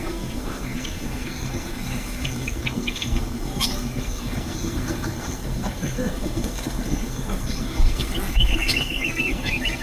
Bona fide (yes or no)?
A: no